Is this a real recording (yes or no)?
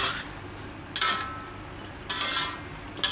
yes